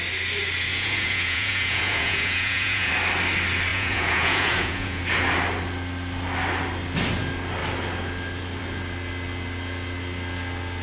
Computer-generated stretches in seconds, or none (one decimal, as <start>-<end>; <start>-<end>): 0.7-2.9; 3.7-5.0